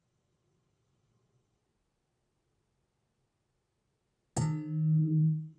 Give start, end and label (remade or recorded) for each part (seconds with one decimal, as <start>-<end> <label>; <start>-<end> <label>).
0.0-1.6 remade; 1.6-5.0 recorded; 5.0-5.6 remade